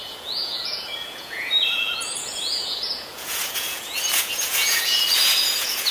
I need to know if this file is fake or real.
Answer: fake